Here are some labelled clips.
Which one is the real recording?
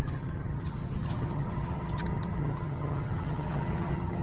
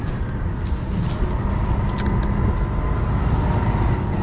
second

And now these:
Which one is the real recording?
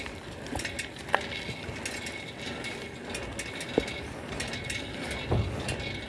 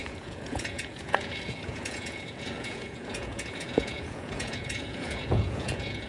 first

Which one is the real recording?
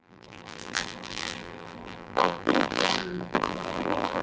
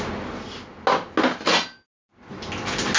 second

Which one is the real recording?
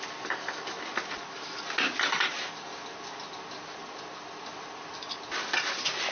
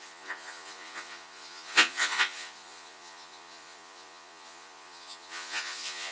first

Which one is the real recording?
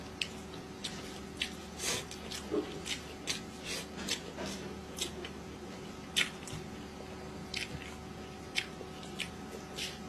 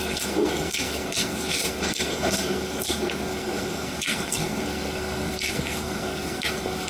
first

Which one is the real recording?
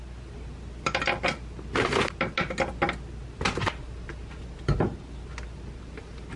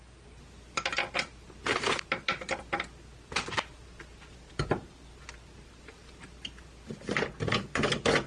first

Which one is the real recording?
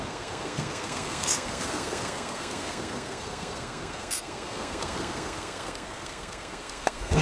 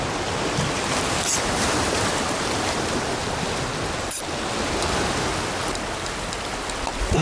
second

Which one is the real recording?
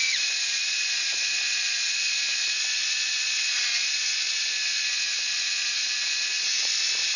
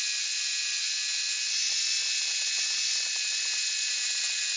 second